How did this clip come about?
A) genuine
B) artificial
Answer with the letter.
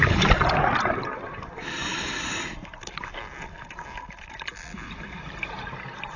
A